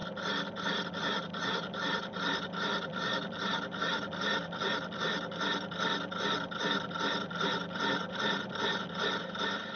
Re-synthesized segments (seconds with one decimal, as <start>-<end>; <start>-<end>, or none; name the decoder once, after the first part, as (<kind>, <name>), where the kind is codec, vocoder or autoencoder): 0.0-9.8 (vocoder, BigVGAN v2)